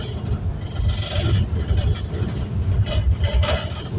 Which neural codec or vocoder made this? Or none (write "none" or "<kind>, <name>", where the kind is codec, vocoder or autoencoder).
none